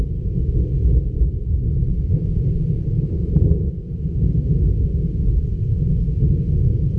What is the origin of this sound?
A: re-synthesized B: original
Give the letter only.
B